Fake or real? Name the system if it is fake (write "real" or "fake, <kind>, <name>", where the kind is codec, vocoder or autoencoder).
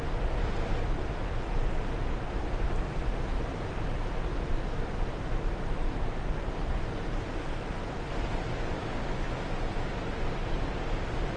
real